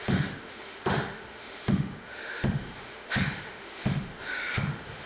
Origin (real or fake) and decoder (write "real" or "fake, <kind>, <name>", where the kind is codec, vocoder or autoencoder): fake, autoencoder, DAC-VAE